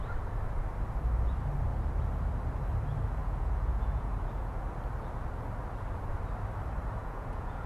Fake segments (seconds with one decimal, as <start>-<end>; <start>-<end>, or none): 3.2-4.6; 7.0-7.7